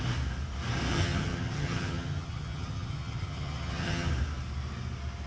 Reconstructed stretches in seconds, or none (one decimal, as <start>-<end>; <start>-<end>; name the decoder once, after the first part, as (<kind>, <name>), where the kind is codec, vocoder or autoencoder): 0.9-4.1 (vocoder, HiFi-GAN)